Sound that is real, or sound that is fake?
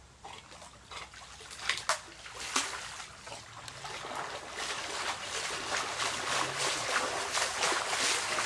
real